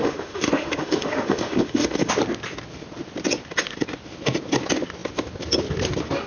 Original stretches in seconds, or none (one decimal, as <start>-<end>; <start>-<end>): 2.1-6.3